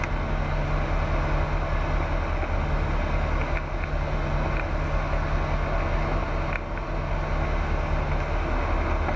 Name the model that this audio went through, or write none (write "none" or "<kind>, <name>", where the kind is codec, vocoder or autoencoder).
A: none